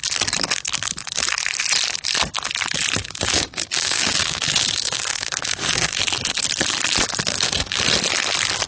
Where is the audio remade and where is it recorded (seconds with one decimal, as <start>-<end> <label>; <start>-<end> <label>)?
0.0-3.0 recorded; 3.0-6.0 remade; 6.0-7.3 recorded; 7.3-7.8 remade; 7.8-8.7 recorded